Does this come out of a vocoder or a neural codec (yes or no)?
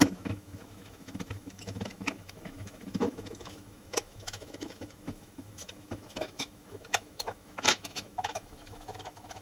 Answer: yes